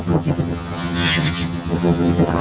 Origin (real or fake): fake